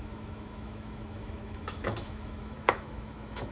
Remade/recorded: remade